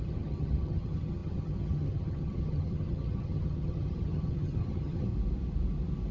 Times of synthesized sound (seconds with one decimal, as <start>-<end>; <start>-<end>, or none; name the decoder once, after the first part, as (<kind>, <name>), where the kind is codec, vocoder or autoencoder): 0.0-5.1 (vocoder, HiFi-GAN)